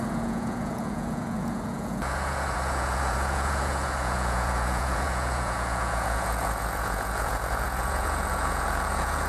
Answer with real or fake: fake